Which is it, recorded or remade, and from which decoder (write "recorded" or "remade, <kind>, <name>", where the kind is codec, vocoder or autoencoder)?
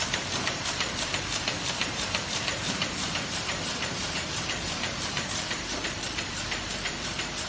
remade, vocoder, BigVGAN v2